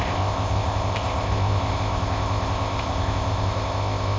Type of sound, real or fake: fake